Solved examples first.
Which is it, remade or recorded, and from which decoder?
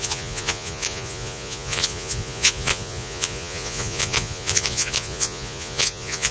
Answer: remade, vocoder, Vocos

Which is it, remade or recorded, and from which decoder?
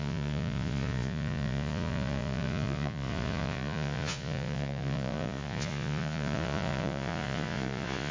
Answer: remade, vocoder, Vocos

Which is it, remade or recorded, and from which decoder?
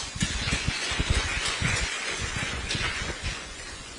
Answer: remade, vocoder, Vocos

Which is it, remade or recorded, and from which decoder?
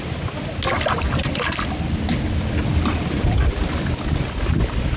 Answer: recorded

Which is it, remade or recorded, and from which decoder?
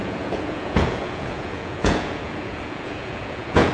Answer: remade, vocoder, Vocos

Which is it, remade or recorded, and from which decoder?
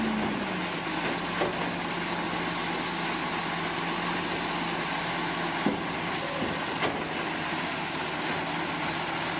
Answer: recorded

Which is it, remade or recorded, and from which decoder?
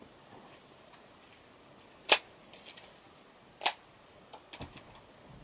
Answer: recorded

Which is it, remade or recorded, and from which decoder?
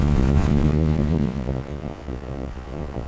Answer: remade, vocoder, Vocos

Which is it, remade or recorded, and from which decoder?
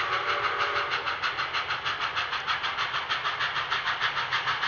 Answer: recorded